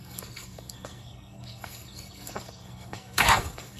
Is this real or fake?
fake